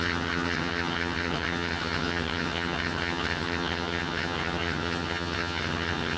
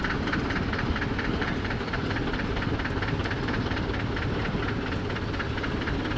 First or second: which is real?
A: second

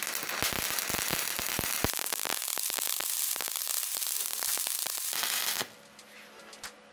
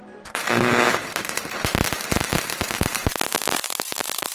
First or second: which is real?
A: first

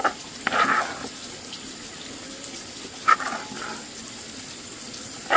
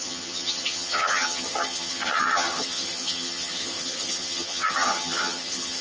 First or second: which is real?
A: first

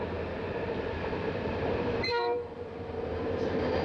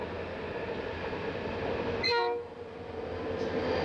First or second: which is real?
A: second